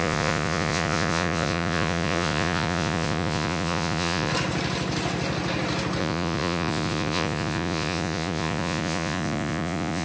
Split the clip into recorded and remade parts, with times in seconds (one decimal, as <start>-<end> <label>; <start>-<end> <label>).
0.0-4.3 remade; 4.3-6.0 recorded; 6.0-10.0 remade